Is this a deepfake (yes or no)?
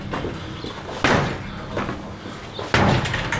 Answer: no